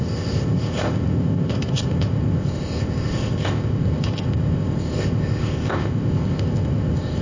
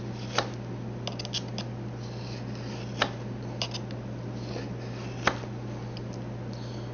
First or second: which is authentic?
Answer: second